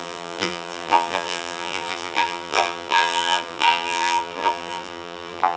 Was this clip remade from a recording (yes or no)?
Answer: yes